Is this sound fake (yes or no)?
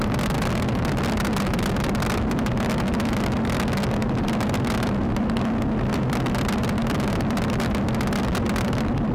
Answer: no